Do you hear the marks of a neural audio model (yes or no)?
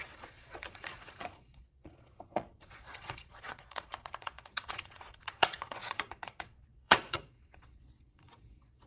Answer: yes